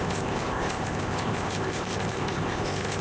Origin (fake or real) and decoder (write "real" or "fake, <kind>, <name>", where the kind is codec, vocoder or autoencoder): fake, codec, ZipCodec